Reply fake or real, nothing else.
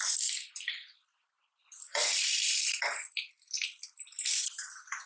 fake